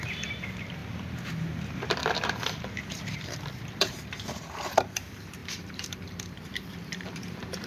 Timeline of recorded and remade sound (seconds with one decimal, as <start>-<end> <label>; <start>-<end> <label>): 0.0-7.7 remade